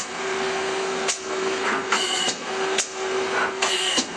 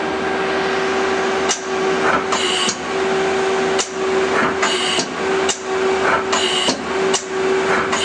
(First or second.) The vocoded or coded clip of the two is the first